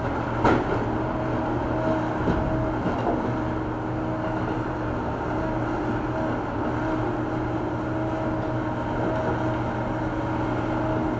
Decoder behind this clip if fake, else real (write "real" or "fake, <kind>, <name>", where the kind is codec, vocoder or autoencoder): real